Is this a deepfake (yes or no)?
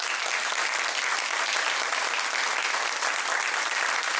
no